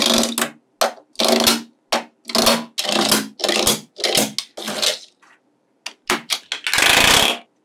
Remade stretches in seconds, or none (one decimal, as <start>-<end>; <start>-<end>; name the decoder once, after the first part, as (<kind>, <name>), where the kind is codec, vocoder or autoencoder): none